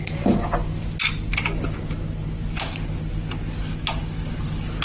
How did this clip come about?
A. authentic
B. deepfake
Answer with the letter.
A